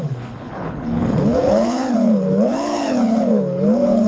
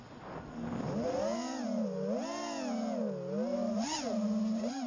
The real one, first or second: second